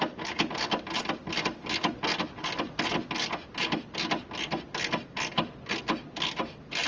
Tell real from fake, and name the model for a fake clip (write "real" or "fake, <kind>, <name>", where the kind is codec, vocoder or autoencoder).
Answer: real